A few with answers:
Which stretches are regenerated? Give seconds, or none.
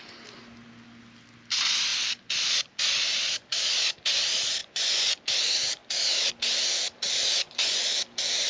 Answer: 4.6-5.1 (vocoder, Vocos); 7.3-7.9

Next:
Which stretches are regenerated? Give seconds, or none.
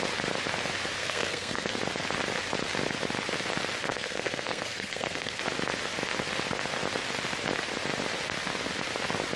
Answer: 1.0-1.8 (codec, SNAC); 3.9-5.4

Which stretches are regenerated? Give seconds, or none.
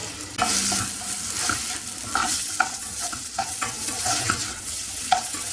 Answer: 2.2-5.5 (vocoder, WaveNeXt)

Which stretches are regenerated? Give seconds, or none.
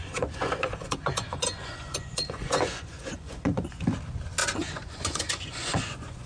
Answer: 0.0-3.8 (vocoder, Vocos); 4.4-6.3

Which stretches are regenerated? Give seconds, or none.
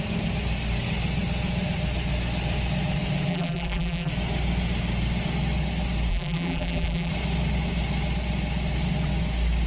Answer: 3.3-4.1 (vocoder, BigVGAN v2); 6.1-7.1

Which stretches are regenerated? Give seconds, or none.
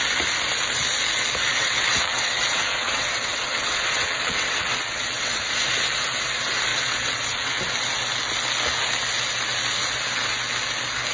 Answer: 1.5-5.4 (vocoder, WaveNeXt); 6.7-7.6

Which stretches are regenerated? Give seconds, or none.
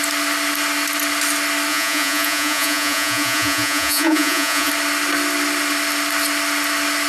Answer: 1.7-4.7 (vocoder, Vocos)